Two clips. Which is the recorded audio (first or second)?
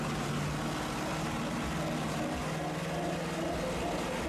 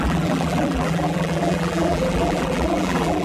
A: first